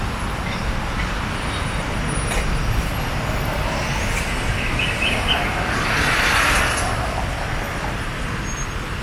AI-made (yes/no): no